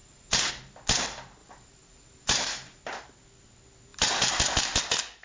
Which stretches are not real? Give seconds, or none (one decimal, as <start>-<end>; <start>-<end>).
0.0-0.5; 1.4-2.8; 3.9-4.8